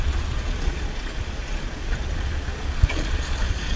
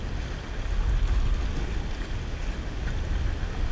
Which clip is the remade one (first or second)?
first